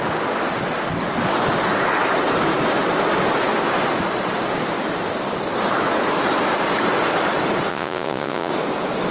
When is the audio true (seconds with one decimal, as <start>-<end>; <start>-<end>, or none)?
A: 0.0-7.7; 8.5-9.1